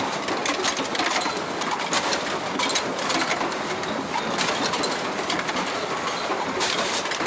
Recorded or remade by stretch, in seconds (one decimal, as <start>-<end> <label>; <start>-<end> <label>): 0.0-7.3 recorded